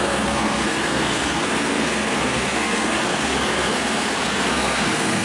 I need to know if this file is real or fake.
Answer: fake